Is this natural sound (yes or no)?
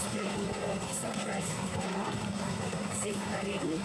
no